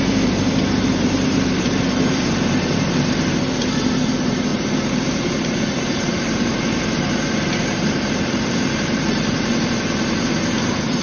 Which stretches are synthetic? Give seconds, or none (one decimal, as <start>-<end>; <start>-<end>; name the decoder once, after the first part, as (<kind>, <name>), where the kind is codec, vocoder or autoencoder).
0.0-4.5 (vocoder, BigVGAN v2); 5.0-11.0